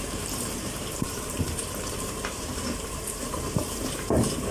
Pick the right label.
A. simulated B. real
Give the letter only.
A